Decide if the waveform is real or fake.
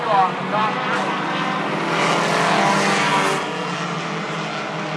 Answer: real